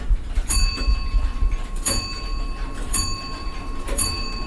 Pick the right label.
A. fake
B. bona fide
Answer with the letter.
A